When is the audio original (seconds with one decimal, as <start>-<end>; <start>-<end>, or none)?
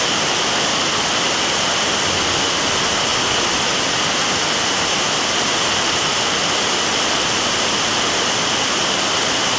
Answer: 0.0-9.6